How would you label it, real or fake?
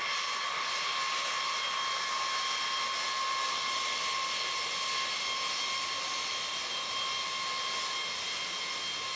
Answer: real